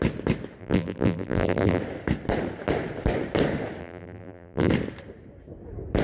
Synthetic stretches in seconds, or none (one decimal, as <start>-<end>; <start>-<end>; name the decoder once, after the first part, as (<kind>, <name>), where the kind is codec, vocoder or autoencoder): 0.6-1.8 (vocoder, BigVGAN v2); 3.8-4.7